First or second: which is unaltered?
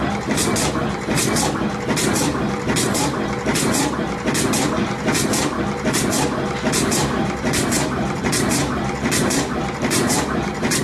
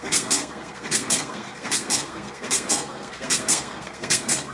first